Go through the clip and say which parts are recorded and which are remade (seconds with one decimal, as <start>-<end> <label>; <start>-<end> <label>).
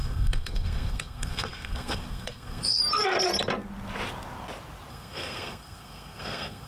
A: 0.0-2.8 remade; 2.8-4.9 recorded; 4.9-6.7 remade